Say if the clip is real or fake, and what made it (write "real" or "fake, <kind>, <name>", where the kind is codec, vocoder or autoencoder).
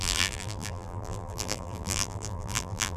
fake, vocoder, BigVGAN v2